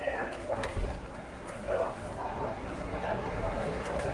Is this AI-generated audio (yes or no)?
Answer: yes